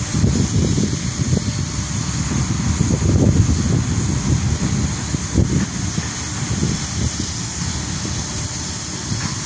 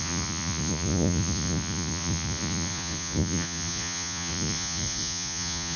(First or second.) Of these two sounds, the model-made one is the second